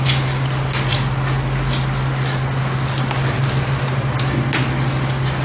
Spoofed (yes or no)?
no